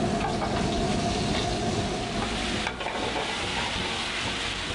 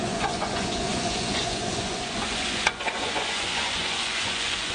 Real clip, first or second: first